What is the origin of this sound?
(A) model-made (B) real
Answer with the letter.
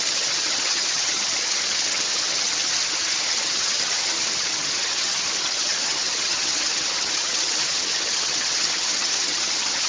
A